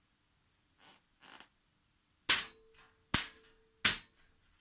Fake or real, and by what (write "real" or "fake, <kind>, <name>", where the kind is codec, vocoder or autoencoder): real